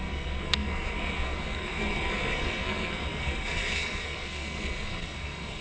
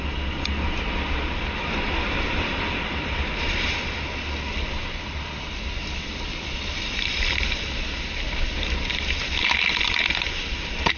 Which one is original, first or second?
second